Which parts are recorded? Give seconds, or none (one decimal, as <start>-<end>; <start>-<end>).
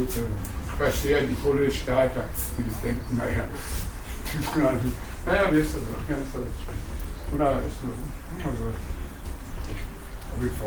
0.0-1.6; 5.5-6.2; 6.8-10.7